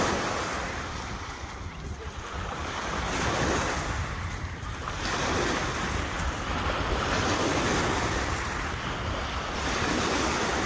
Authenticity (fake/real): real